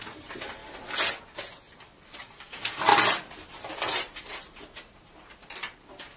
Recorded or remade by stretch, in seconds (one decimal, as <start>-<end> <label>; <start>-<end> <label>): 0.0-0.6 remade; 0.6-1.2 recorded; 1.2-2.9 remade; 2.9-3.7 recorded; 3.7-6.2 remade